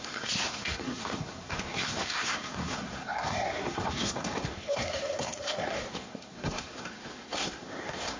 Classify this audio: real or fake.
fake